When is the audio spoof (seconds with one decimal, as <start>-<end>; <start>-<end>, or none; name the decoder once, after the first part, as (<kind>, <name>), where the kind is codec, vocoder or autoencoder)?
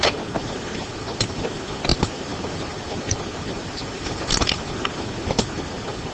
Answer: 0.8-1.4 (vocoder, BigVGAN v2); 1.9-3.2; 3.6-4.4